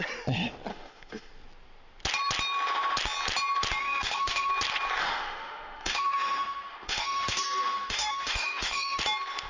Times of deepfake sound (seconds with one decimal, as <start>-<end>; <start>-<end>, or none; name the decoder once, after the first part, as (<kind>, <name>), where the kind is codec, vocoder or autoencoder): 0.7-1.3 (autoencoder, DAC-VAE); 3.8-4.5; 5.0-9.0